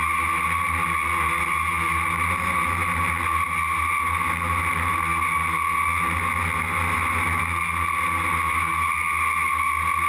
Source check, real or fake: real